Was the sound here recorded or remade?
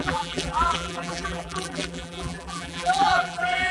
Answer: remade